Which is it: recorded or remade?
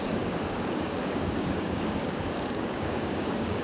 remade